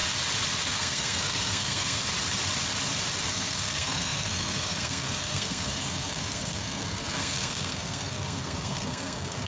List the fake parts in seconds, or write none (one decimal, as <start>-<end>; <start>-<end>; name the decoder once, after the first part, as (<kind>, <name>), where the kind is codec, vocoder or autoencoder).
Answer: 0.7-2.1 (codec, SNAC); 3.3-9.5